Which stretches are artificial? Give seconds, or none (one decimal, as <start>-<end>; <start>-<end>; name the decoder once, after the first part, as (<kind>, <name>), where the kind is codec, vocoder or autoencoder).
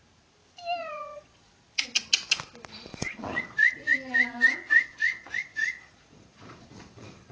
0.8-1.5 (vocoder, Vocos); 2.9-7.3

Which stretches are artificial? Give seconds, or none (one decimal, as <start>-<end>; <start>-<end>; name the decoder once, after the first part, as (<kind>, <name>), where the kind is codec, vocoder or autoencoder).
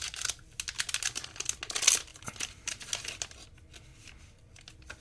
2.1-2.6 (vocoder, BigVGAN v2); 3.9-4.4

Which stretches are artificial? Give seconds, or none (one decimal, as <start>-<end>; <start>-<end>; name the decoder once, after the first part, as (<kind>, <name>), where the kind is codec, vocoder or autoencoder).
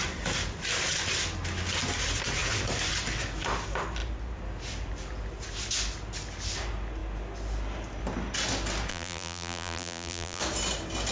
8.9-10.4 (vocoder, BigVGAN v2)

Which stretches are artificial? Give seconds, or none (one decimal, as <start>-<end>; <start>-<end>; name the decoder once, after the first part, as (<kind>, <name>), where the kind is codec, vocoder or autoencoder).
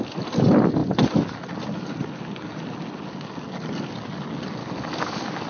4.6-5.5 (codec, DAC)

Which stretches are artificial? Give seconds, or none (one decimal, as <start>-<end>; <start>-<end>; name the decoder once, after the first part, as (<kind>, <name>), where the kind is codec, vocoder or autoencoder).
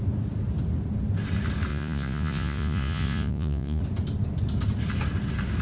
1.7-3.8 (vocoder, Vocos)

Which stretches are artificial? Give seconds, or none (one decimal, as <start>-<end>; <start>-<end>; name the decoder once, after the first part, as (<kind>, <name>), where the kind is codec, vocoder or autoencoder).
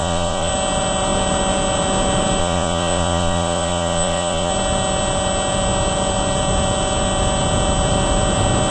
0.0-0.5 (vocoder, Vocos); 2.4-4.5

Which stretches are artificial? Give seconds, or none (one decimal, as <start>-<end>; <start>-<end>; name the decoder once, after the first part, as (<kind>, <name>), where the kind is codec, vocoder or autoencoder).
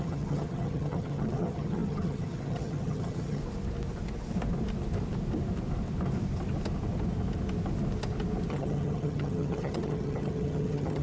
0.0-3.4 (vocoder, HiFi-GAN); 8.5-11.0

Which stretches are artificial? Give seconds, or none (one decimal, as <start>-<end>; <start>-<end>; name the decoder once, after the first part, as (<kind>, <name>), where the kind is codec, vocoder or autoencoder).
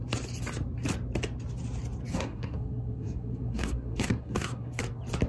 2.1-4.8 (codec, SNAC)